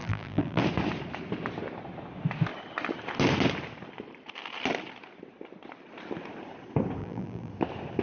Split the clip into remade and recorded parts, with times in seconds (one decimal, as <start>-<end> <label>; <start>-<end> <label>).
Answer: 0.0-0.6 remade; 0.6-7.0 recorded; 7.0-7.5 remade; 7.5-8.0 recorded